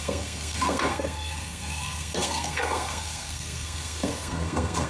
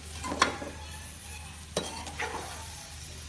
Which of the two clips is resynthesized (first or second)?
first